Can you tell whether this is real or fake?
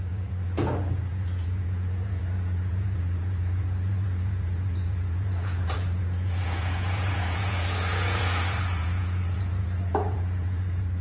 fake